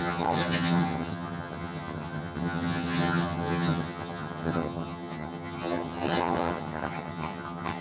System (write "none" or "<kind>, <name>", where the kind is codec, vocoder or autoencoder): vocoder, HiFi-GAN